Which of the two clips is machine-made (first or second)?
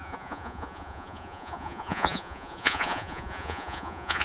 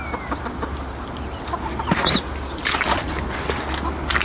first